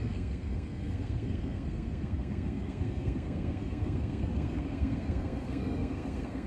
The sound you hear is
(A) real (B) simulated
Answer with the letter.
B